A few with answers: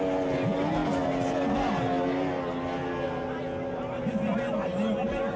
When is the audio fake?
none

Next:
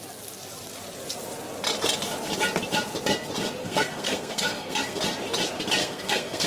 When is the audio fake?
3.6-5.0 (codec, SNAC); 5.8-6.5